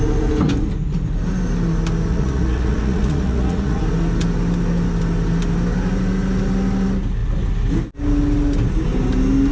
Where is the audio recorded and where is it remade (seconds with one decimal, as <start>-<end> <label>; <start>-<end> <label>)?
0.0-2.1 recorded; 2.1-3.8 remade; 3.8-9.5 recorded